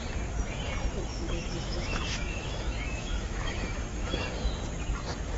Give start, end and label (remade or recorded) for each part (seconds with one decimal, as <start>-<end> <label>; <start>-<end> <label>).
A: 0.0-1.1 recorded; 1.1-4.3 remade; 4.3-5.4 recorded